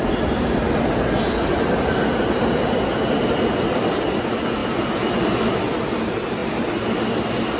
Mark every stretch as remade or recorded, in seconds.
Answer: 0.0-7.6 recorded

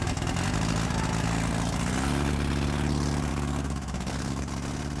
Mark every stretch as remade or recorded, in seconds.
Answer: 0.0-3.3 recorded; 3.3-4.5 remade; 4.5-5.0 recorded

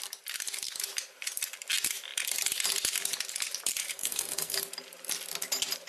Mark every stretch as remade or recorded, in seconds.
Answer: 0.0-3.8 recorded; 3.8-4.6 remade; 4.6-5.9 recorded

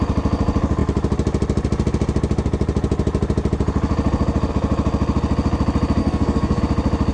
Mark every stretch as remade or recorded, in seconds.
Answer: 0.0-6.0 recorded; 6.0-6.6 remade; 6.6-7.1 recorded

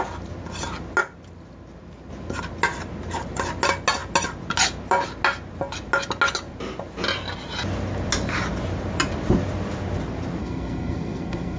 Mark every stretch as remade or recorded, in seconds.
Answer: 0.0-10.4 recorded; 10.4-11.6 remade

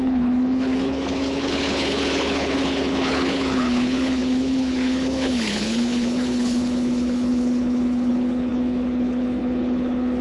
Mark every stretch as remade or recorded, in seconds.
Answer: 0.0-10.2 remade

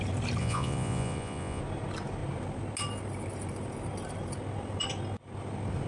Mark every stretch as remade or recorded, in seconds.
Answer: 0.0-0.4 recorded; 0.4-1.6 remade; 1.6-5.9 recorded